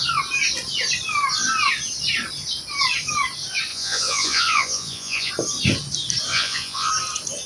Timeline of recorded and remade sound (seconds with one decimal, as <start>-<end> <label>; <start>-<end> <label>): 0.0-3.7 recorded; 3.7-5.3 remade; 5.3-6.3 recorded; 6.3-6.9 remade; 6.9-7.5 recorded